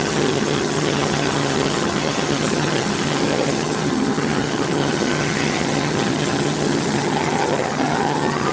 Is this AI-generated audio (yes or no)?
yes